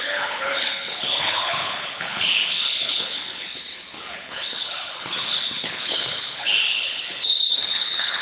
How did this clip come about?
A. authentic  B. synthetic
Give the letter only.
B